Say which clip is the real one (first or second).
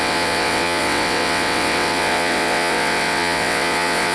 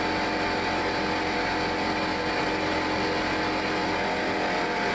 second